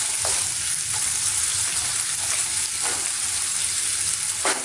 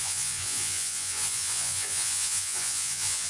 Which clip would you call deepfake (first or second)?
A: second